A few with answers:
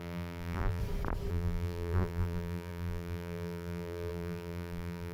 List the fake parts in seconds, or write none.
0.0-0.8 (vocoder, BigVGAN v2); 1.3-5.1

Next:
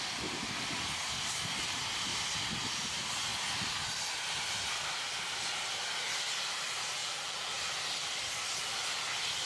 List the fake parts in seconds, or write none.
7.0-7.5 (vocoder, BigVGAN v2)

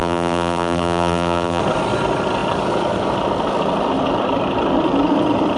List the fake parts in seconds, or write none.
0.0-1.6 (vocoder, BigVGAN v2)

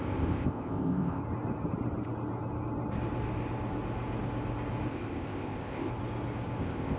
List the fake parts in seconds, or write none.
0.0-1.2 (codec, ZipCodec); 4.9-5.9; 6.6-7.0

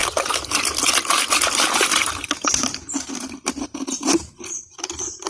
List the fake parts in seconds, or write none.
none

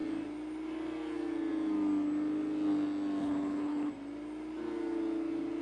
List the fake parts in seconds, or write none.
3.2-3.9 (codec, HILCodec)

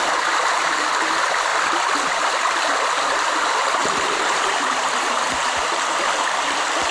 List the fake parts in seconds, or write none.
1.5-2.6 (vocoder, BigVGAN v2); 3.8-6.9